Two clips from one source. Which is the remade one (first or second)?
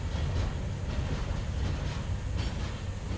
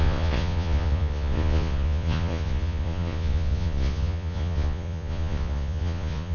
second